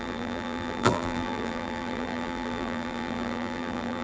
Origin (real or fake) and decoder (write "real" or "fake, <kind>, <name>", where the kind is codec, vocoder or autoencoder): fake, vocoder, BigVGAN v2